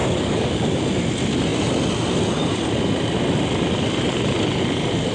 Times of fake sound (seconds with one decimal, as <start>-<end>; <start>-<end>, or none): 0.0-0.8